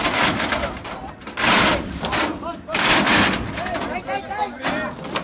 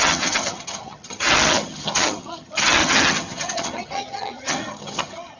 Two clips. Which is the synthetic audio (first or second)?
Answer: second